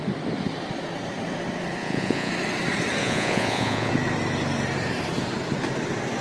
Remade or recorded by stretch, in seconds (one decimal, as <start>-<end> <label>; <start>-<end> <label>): 0.0-1.8 recorded; 1.8-2.3 remade; 2.3-3.0 recorded; 3.0-3.9 remade; 3.9-6.2 recorded